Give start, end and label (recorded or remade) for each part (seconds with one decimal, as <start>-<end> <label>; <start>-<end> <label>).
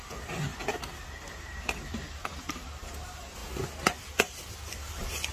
0.0-0.5 remade; 0.5-1.4 recorded; 1.4-3.4 remade; 3.4-4.8 recorded; 4.8-5.3 remade